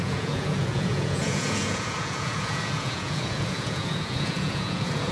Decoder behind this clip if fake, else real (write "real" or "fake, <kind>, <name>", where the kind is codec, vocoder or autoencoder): fake, vocoder, Vocos